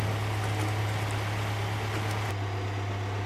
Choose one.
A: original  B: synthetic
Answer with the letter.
A